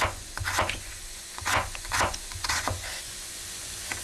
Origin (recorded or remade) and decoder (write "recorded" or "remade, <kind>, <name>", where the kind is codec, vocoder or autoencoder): remade, vocoder, Vocos